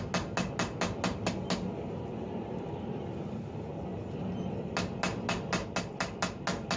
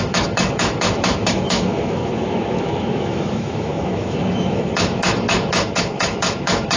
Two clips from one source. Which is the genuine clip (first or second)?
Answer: first